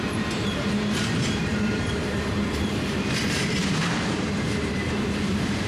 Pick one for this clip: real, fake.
fake